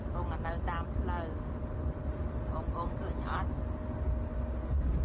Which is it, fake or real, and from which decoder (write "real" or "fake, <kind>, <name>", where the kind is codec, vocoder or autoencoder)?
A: real